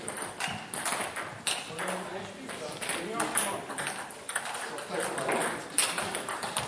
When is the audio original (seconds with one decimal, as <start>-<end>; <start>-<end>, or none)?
0.0-6.7